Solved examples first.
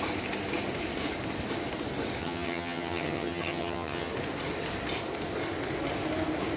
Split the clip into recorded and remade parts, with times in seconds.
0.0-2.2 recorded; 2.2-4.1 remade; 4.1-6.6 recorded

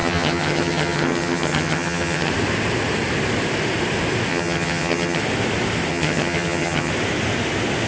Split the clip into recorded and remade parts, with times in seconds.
0.0-2.3 remade; 2.3-4.3 recorded; 4.3-5.2 remade; 5.2-5.9 recorded; 5.9-6.9 remade; 6.9-7.9 recorded

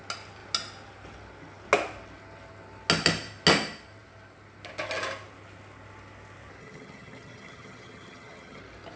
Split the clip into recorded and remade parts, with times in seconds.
0.0-6.6 recorded; 6.6-8.6 remade; 8.6-9.0 recorded

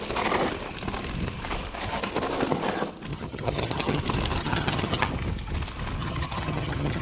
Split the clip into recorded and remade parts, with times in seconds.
0.0-3.1 recorded; 3.1-4.0 remade; 4.0-4.4 recorded; 4.4-5.1 remade; 5.1-6.0 recorded; 6.0-7.0 remade

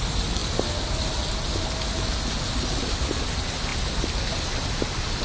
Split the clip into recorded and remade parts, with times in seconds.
0.0-5.2 recorded

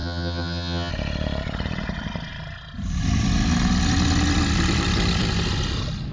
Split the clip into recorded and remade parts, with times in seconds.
0.0-0.9 remade; 0.9-6.1 recorded

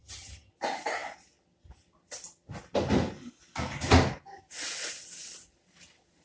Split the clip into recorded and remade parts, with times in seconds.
0.0-0.5 remade; 0.5-6.2 recorded

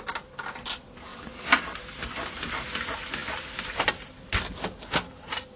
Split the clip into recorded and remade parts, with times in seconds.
0.0-5.6 recorded